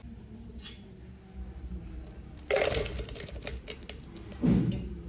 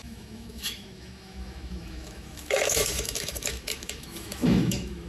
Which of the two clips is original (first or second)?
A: first